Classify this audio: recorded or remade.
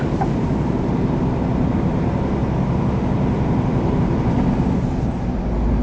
recorded